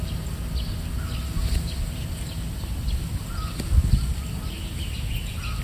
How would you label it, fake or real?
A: real